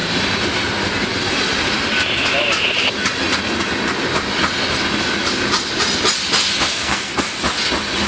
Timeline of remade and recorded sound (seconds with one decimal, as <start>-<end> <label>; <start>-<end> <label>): 0.0-6.7 recorded; 6.7-7.2 remade; 7.2-8.1 recorded